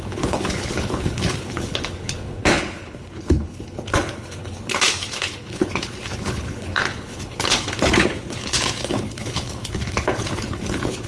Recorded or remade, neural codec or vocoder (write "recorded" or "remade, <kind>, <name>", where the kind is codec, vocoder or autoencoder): remade, codec, HILCodec